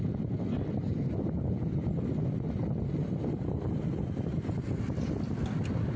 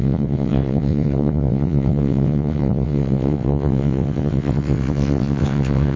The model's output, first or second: second